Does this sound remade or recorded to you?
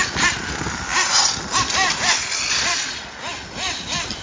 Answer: recorded